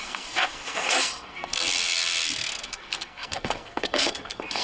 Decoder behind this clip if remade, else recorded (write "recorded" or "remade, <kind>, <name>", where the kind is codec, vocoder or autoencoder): remade, codec, SNAC